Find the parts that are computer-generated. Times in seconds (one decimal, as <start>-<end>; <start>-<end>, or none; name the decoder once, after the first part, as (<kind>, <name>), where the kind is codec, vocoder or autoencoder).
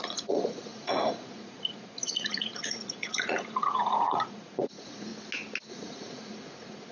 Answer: 0.0-5.1 (vocoder, Vocos); 5.7-6.9